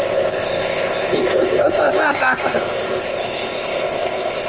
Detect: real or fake fake